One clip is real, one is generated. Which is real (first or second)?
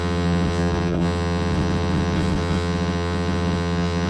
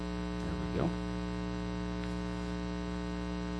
second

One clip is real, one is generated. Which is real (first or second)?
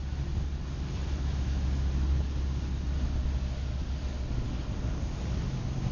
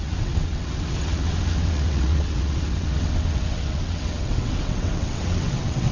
first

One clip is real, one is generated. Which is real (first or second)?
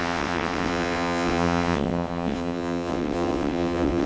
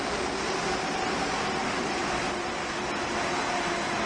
second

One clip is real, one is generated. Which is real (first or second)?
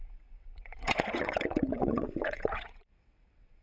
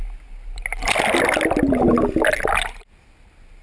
second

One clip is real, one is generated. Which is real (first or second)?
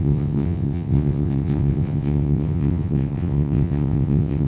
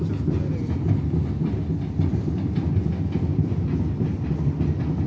second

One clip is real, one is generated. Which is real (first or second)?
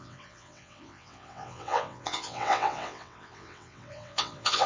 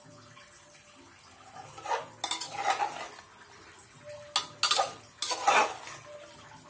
second